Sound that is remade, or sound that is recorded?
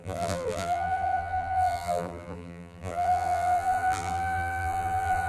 remade